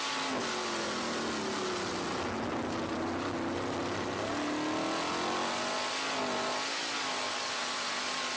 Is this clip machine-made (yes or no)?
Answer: no